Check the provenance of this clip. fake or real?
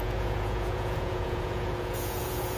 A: fake